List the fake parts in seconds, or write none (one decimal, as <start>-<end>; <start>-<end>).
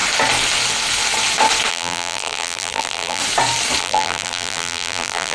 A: 1.7-3.2; 3.8-5.3